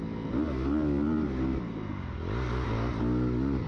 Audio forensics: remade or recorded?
recorded